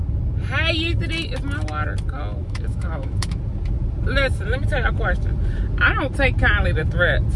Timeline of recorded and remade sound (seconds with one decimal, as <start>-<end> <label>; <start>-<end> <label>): 0.0-2.4 recorded; 2.4-3.4 remade; 3.4-7.4 recorded

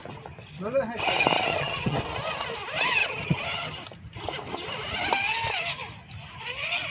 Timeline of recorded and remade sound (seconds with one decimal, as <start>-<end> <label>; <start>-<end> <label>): 0.0-1.5 recorded; 1.5-2.0 remade; 2.0-3.0 recorded; 3.0-3.8 remade; 3.8-6.9 recorded

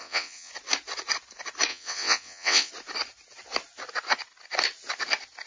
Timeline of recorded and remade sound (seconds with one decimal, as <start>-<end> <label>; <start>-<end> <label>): 0.0-0.5 remade; 0.5-1.7 recorded; 1.7-2.7 remade; 2.7-5.5 recorded

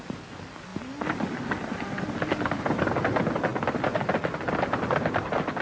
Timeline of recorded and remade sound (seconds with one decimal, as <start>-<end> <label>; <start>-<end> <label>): 0.0-5.6 recorded

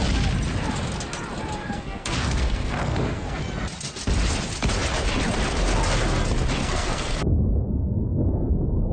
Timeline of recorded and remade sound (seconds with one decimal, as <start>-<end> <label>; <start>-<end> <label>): 0.0-1.6 recorded; 1.6-3.4 remade; 3.4-6.6 recorded; 6.6-7.3 remade; 7.3-7.7 recorded; 7.7-8.9 remade

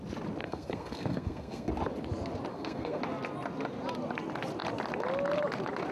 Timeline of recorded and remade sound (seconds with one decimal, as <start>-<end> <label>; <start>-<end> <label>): 0.0-0.4 recorded; 0.4-1.7 remade; 1.7-2.5 recorded; 2.5-3.0 remade; 3.0-5.9 recorded

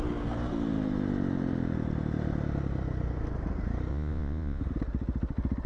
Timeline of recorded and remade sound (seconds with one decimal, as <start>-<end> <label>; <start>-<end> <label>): 0.0-3.9 recorded; 3.9-4.6 remade; 4.6-5.7 recorded